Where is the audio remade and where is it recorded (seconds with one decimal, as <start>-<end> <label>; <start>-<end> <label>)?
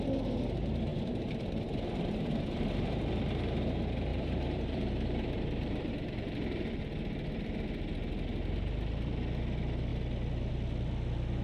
0.0-0.9 recorded; 0.9-3.0 remade; 3.0-4.1 recorded; 4.1-6.8 remade; 6.8-11.4 recorded